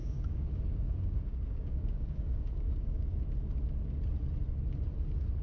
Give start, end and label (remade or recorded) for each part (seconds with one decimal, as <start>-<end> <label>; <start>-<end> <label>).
0.0-3.2 remade; 3.2-5.4 recorded